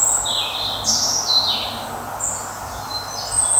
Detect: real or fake real